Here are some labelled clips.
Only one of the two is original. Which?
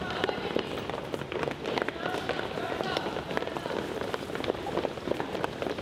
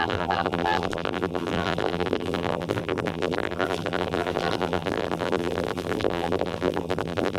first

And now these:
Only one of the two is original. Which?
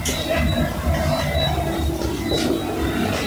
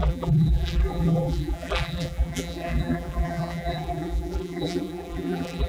first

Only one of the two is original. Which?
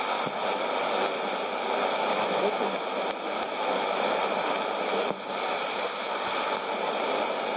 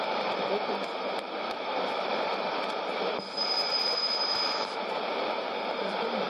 first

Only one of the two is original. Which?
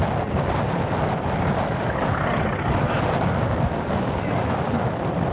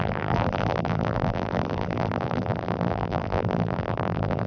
first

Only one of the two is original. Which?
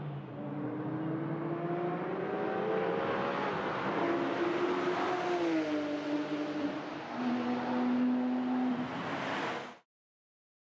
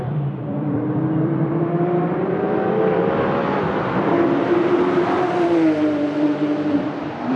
first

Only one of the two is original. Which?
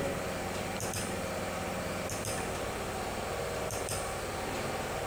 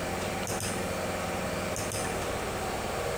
second